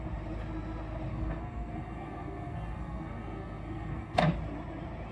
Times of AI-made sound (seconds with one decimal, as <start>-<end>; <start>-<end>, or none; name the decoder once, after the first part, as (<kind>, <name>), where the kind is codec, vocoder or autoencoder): 1.1-4.2 (codec, SNAC)